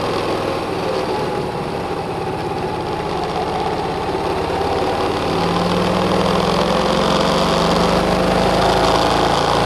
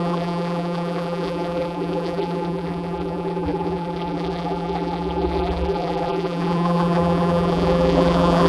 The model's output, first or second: second